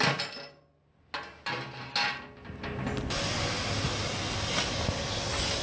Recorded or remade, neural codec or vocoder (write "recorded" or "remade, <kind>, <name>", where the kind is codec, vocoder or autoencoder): recorded